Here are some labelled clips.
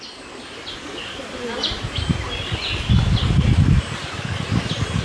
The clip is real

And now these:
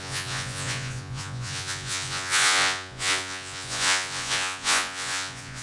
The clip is fake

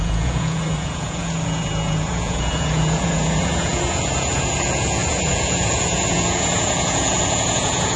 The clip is fake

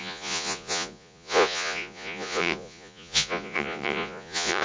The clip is fake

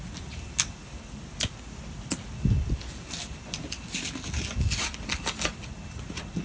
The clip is real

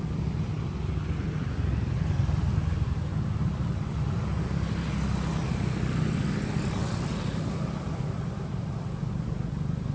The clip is real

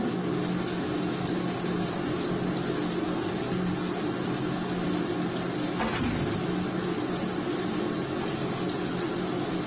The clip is real